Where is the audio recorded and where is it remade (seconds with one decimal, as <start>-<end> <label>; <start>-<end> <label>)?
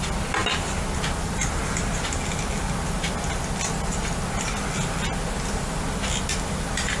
0.0-7.0 recorded